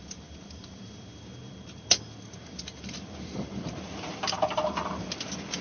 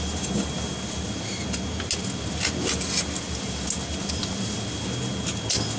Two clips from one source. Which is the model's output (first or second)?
first